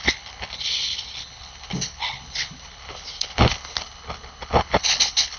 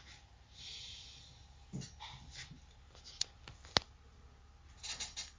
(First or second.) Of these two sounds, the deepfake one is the first